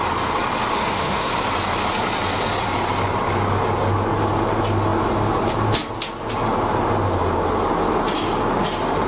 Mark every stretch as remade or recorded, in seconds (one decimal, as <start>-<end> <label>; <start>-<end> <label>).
0.0-0.7 recorded; 0.7-1.3 remade; 1.3-9.1 recorded